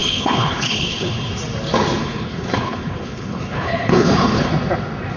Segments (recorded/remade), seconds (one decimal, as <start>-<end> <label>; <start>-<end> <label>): 0.0-1.3 remade; 1.3-2.0 recorded; 2.0-4.5 remade; 4.5-5.2 recorded